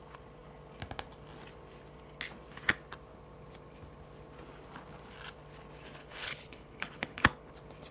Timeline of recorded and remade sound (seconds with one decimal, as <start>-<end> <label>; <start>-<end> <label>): 0.0-6.0 recorded; 6.0-7.5 remade; 7.5-7.9 recorded